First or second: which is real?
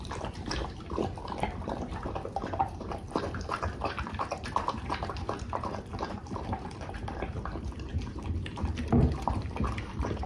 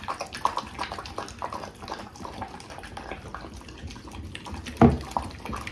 second